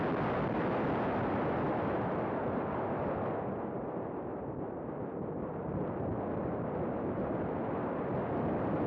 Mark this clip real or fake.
real